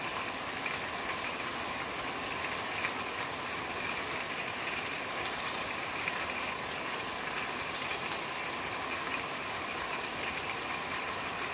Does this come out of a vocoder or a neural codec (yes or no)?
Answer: no